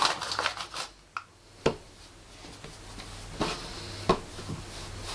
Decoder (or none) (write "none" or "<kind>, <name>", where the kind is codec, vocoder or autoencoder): none